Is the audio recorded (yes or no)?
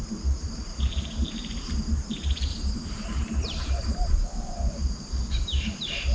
no